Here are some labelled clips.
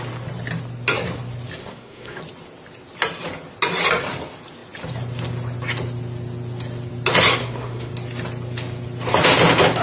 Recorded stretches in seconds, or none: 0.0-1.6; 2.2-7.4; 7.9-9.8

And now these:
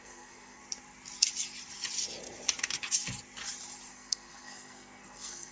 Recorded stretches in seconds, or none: 0.6-3.9

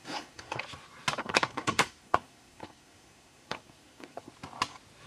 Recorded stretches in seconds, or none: 0.6-1.2; 4.3-5.1